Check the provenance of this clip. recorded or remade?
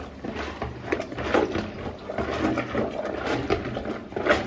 recorded